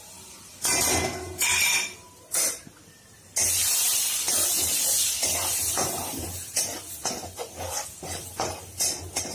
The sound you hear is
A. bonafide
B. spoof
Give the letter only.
A